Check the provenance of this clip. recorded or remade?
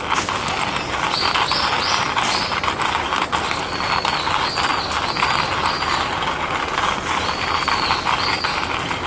recorded